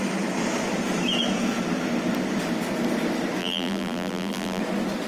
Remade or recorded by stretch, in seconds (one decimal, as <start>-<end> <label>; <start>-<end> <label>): 0.0-3.4 recorded; 3.4-4.6 remade; 4.6-5.1 recorded

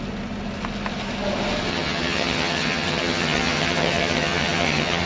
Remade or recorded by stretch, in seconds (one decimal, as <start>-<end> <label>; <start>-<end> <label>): 0.0-1.7 recorded; 1.7-5.1 remade

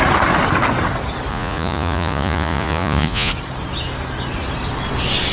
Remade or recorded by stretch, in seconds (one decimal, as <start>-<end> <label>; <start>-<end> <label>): 0.0-1.3 recorded; 1.3-3.3 remade; 3.3-5.3 recorded